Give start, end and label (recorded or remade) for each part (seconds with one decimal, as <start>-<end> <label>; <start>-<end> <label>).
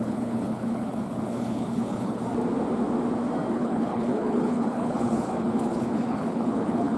0.0-2.2 remade; 2.2-3.5 recorded; 3.5-7.0 remade